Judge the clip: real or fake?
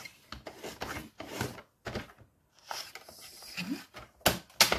real